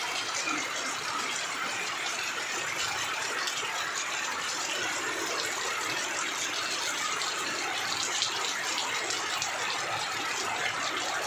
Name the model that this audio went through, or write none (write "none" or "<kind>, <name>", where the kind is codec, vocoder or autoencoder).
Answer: none